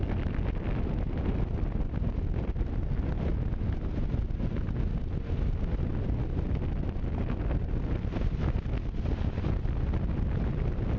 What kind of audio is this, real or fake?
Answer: real